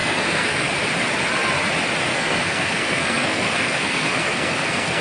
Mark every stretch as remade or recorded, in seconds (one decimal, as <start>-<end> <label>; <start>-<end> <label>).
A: 0.0-0.7 remade; 0.7-2.1 recorded; 2.1-5.0 remade